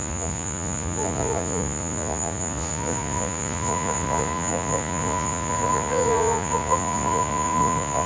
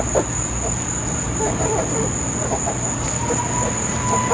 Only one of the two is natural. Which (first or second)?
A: second